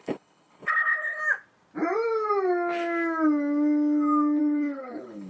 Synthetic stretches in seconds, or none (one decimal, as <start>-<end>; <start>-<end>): 0.0-1.2; 4.4-5.3